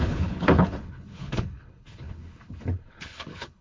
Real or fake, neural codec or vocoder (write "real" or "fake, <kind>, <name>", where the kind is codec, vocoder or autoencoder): fake, codec, HILCodec